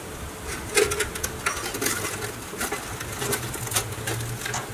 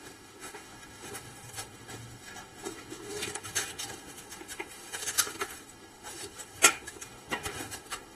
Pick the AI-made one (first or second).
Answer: second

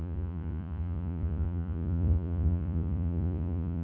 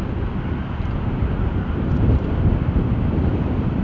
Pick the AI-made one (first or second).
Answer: first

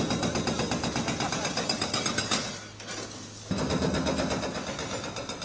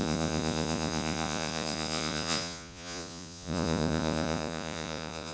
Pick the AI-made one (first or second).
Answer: second